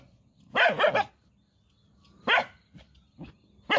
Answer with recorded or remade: recorded